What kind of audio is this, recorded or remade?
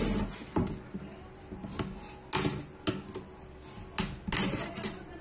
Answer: recorded